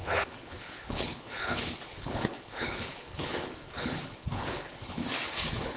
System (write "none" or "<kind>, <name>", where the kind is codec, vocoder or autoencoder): codec, HILCodec